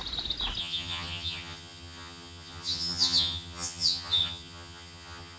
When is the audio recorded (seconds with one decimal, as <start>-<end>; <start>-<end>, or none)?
0.0-0.6

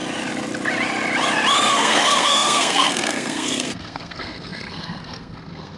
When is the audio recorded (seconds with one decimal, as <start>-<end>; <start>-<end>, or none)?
0.0-1.7

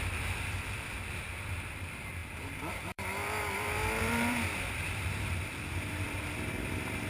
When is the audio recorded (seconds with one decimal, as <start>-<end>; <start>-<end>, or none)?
none

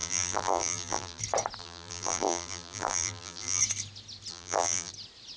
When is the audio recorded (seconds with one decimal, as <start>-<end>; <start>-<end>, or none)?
1.2-1.6; 3.6-4.3; 4.9-5.4

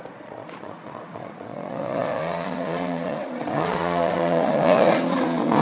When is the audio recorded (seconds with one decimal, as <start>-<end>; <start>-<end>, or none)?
none